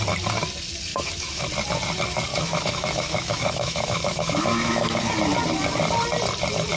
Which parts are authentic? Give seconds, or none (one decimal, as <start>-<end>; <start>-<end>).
0.0-0.9; 1.4-2.3; 5.1-6.8